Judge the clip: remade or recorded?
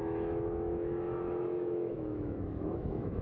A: remade